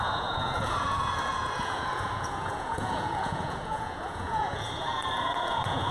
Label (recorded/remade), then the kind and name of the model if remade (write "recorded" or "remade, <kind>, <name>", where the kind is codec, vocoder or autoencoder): remade, vocoder, Vocos